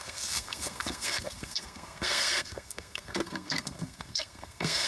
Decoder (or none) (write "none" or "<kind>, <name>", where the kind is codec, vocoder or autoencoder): codec, SNAC